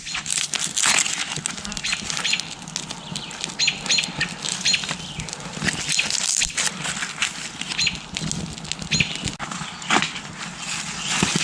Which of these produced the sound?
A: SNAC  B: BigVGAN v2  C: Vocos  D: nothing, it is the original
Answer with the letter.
D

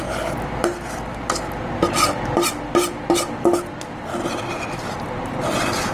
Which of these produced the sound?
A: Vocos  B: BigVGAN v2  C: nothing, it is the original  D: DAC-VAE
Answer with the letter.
C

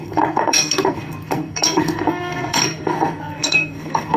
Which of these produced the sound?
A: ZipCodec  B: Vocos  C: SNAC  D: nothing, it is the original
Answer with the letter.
C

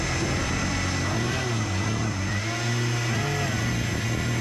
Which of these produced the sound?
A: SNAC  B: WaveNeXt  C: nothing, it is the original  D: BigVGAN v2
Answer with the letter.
C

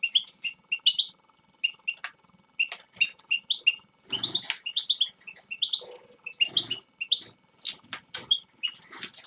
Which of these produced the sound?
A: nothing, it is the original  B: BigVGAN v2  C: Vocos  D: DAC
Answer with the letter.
A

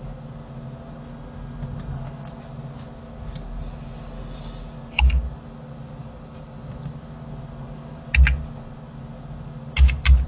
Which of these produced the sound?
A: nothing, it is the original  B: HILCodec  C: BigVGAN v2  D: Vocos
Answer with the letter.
A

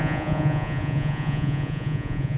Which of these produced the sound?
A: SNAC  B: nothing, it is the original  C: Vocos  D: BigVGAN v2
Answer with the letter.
C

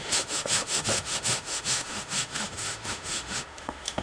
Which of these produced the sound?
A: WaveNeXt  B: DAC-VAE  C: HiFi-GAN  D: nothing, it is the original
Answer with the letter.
B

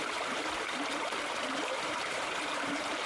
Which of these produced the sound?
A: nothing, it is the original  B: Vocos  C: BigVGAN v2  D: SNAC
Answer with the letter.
C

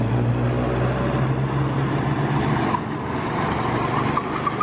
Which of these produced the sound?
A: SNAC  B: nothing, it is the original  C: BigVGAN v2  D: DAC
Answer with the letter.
B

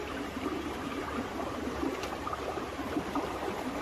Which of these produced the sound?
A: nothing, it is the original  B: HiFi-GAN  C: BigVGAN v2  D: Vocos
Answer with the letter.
C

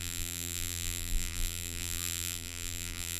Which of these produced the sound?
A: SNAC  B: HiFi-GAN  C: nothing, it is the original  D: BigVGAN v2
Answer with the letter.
D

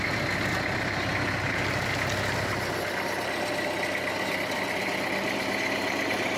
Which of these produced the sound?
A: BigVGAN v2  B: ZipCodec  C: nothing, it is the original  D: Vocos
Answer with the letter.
C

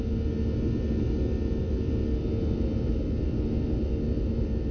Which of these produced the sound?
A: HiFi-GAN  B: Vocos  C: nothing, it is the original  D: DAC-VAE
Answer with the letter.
C